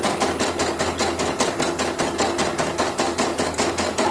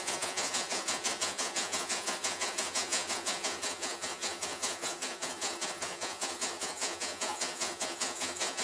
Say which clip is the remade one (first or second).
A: second